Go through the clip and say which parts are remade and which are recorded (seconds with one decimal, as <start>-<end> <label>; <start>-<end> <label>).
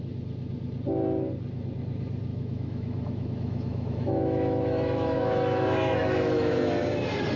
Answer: 0.0-2.3 recorded; 2.3-6.7 remade; 6.7-7.4 recorded